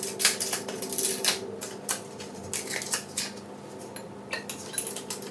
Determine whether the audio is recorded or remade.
recorded